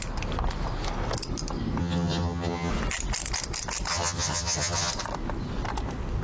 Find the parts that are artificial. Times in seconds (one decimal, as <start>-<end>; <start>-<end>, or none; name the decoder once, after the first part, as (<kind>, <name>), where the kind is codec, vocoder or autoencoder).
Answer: 1.8-2.7 (vocoder, HiFi-GAN); 3.9-4.9